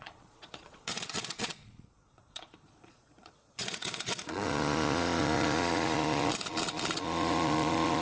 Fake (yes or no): yes